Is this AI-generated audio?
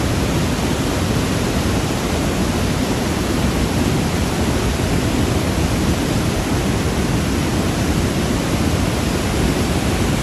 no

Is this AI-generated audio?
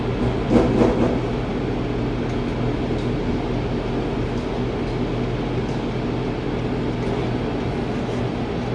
no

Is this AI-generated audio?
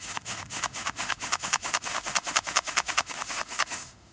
yes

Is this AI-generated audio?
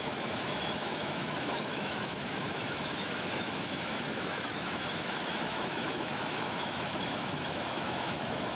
yes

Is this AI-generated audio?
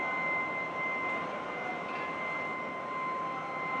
no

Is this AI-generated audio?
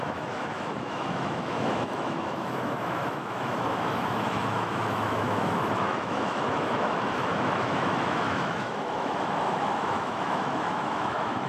yes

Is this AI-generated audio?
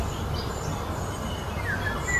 no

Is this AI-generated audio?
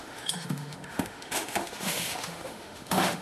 yes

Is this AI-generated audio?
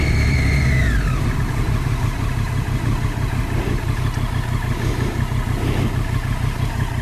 no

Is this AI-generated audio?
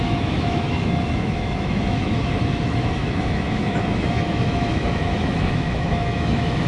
yes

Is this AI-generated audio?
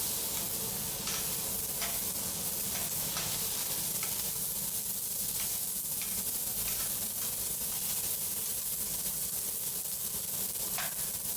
no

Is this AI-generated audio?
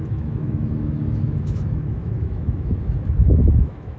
yes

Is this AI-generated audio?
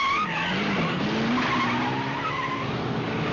no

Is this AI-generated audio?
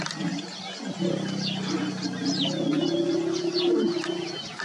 no